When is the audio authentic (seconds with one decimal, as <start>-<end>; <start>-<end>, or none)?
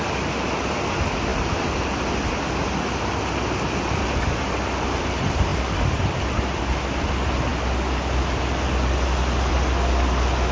0.0-10.5